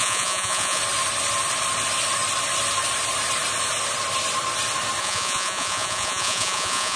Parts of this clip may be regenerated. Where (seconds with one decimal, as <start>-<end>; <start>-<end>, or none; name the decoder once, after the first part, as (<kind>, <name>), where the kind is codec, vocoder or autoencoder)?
0.0-0.8 (vocoder, Vocos); 5.0-7.0